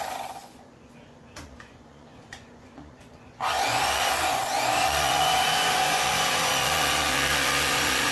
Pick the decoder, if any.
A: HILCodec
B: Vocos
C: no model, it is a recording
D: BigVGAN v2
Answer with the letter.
B